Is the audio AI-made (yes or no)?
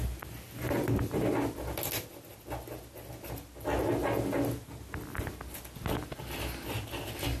no